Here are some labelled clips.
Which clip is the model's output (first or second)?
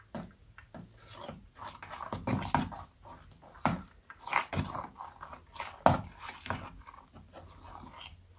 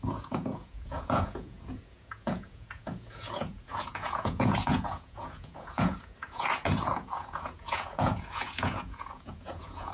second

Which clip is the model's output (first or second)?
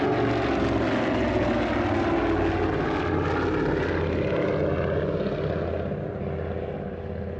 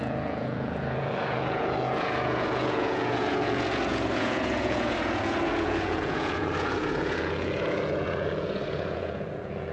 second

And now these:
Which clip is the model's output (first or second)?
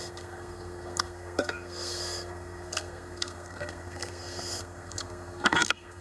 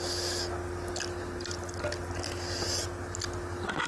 first